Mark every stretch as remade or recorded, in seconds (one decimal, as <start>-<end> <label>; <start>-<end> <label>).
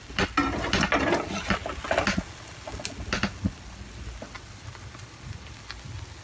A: 0.0-6.2 recorded